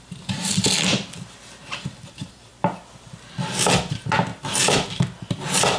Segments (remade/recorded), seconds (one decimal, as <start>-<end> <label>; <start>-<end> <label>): 0.0-0.6 remade; 0.6-2.1 recorded; 2.1-2.5 remade; 2.5-3.9 recorded; 3.9-4.3 remade; 4.3-5.8 recorded